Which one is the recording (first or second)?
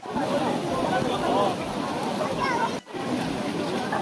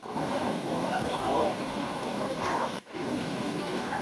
first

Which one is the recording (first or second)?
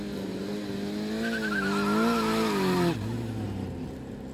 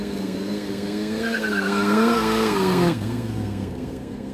first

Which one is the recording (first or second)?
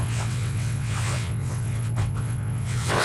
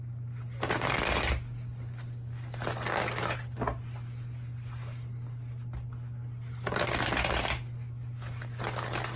second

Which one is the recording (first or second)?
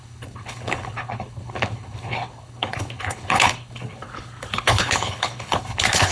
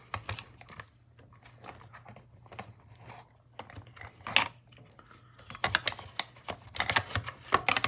second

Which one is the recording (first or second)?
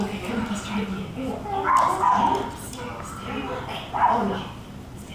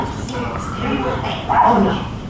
first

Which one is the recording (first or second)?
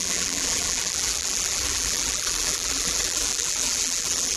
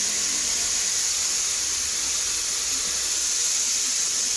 second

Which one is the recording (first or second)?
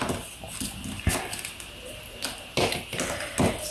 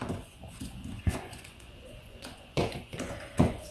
first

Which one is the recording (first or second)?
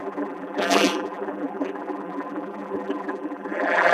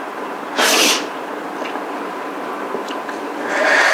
second